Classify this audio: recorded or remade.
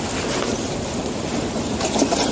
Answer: recorded